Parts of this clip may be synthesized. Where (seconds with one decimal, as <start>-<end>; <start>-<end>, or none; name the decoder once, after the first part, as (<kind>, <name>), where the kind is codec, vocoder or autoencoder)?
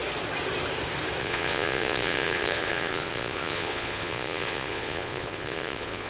1.2-6.1 (vocoder, Vocos)